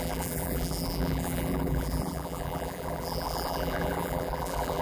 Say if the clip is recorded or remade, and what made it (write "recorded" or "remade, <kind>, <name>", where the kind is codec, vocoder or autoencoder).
remade, vocoder, BigVGAN v2